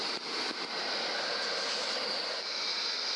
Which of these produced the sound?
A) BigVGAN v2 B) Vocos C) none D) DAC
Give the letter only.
C